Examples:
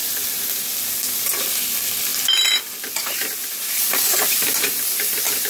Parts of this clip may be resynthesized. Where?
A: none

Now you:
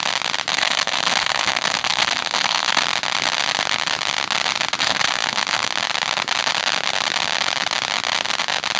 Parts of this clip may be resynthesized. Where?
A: 0.5-2.8 (codec, SNAC); 4.8-5.7